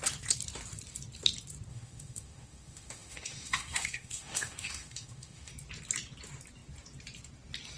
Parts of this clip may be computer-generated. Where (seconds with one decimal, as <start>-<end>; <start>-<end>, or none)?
1.7-5.5